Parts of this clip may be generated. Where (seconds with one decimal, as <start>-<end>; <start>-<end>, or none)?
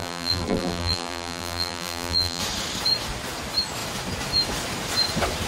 0.0-2.4